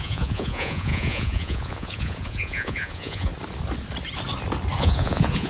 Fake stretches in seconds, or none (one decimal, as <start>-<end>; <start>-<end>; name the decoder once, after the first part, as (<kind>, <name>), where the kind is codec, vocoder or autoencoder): 0.0-3.3 (vocoder, Vocos); 4.8-5.5